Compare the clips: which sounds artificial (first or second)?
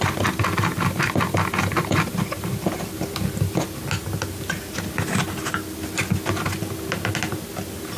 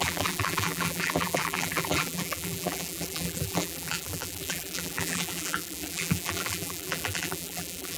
second